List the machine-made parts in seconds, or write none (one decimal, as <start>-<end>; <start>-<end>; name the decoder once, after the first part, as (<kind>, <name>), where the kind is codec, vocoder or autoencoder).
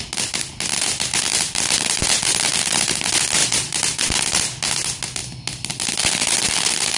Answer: 1.3-2.9 (vocoder, BigVGAN v2); 3.4-4.4